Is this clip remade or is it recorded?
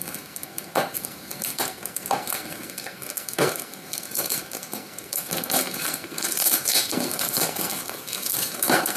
remade